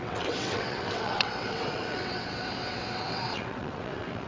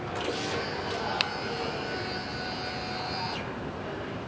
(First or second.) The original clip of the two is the second